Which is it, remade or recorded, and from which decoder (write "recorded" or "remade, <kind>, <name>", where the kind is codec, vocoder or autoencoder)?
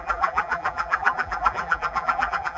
remade, vocoder, BigVGAN v2